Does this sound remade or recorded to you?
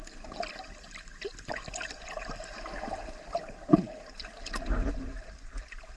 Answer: recorded